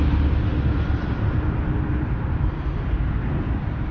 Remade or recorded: recorded